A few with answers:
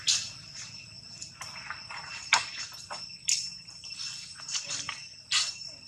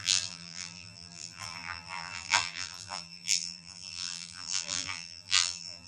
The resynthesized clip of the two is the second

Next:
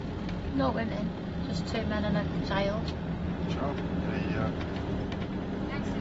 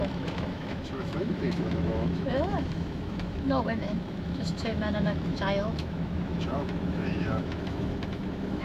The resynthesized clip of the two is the second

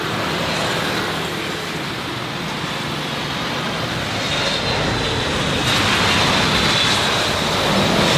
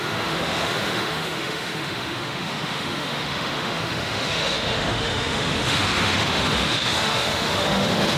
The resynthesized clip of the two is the second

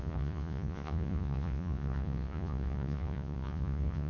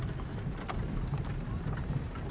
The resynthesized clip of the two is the first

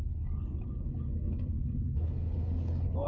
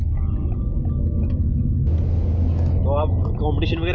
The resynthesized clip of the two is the first